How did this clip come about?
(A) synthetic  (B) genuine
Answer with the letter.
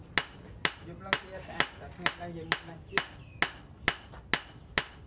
B